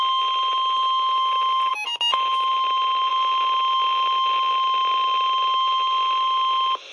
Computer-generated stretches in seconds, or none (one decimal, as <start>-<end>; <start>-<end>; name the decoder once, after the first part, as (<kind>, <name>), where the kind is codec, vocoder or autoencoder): none